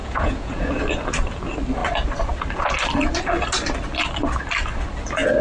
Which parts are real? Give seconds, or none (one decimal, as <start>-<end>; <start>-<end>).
0.7-5.4